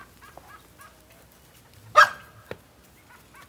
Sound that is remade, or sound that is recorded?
recorded